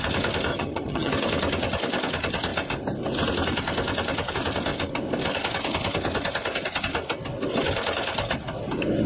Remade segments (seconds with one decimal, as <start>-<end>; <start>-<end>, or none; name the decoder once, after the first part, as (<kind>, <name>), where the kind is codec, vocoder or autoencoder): 0.5-1.1 (vocoder, HiFi-GAN)